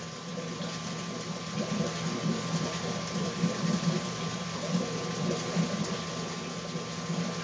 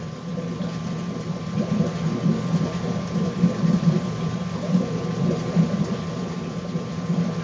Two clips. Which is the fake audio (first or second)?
second